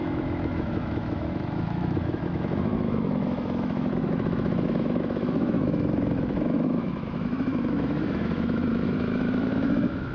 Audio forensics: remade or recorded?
remade